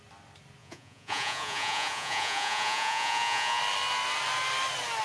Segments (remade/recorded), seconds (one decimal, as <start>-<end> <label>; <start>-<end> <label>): 0.0-0.6 recorded; 0.6-3.6 remade; 3.6-5.0 recorded